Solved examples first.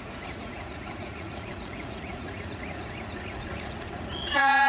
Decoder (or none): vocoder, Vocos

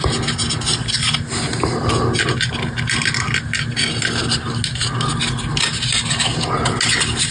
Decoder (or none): none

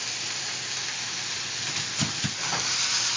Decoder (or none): none